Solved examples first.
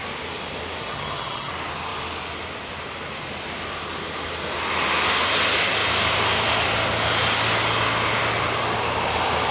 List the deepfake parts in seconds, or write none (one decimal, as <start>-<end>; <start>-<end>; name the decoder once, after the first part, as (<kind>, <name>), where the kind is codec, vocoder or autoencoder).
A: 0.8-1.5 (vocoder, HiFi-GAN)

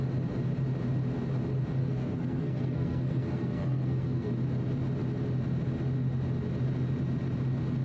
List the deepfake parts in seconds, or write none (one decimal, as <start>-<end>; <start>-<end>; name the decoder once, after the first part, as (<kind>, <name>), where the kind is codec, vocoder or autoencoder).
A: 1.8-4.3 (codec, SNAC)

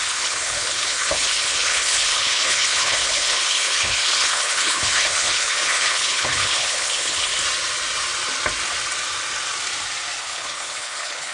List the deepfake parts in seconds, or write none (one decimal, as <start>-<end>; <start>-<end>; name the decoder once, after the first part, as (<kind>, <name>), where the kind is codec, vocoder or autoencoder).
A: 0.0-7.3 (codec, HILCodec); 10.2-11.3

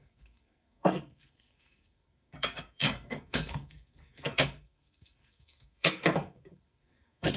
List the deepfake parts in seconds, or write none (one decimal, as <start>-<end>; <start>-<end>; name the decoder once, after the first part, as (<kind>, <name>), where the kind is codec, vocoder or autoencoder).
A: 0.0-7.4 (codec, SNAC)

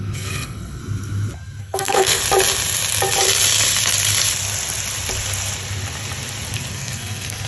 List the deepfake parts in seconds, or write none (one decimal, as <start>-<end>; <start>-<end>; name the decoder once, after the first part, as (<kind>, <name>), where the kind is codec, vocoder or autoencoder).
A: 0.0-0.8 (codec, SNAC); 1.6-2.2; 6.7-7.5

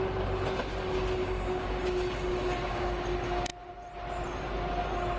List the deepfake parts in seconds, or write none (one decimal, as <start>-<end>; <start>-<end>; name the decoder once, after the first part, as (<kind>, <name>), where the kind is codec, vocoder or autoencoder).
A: 1.2-3.0 (codec, DAC)

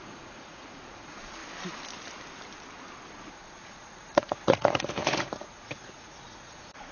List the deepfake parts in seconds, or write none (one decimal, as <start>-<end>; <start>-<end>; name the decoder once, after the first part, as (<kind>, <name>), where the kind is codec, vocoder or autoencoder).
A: 0.0-1.4 (vocoder, Vocos); 3.3-6.9